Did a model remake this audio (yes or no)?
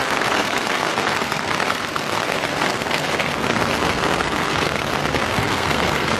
yes